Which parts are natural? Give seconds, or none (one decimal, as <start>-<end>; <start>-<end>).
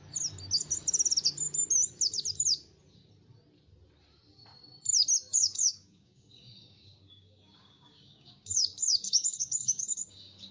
0.0-5.3